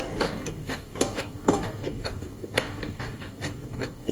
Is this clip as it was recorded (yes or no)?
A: no